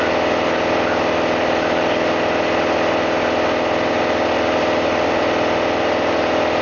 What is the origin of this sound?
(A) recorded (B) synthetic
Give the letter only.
A